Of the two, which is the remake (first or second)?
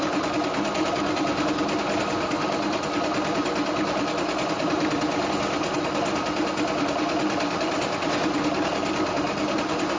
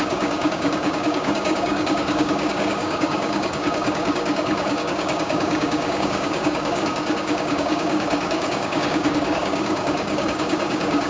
second